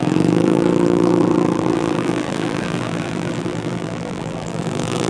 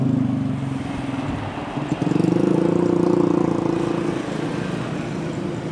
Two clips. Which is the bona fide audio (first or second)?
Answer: second